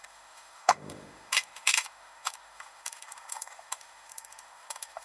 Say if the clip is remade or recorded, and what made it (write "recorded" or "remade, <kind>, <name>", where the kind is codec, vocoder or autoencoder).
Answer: remade, autoencoder, DAC-VAE